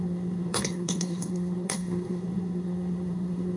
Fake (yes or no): yes